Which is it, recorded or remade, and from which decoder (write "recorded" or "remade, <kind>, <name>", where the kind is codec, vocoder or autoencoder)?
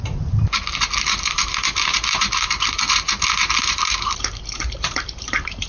remade, vocoder, BigVGAN v2